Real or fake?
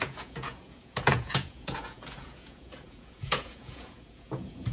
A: fake